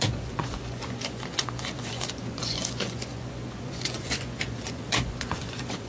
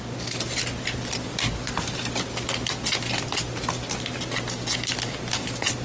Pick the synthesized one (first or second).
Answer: first